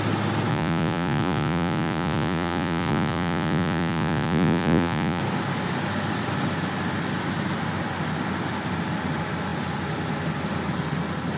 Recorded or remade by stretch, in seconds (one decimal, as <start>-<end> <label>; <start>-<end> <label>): 0.0-0.5 recorded; 0.5-5.2 remade; 5.2-11.4 recorded